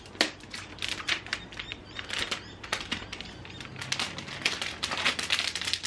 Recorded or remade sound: recorded